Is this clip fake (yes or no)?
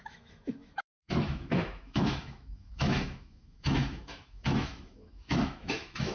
yes